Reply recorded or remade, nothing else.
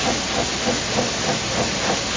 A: recorded